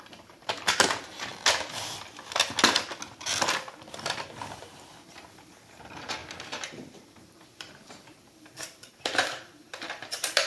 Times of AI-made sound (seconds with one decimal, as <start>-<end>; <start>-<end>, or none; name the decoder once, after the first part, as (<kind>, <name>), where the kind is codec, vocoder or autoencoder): 0.0-1.3 (vocoder, BigVGAN v2); 5.1-10.5